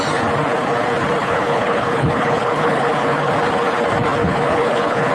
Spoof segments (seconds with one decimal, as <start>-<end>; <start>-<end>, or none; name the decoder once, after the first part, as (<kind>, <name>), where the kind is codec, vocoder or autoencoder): 1.2-3.3 (codec, HILCodec); 4.2-5.1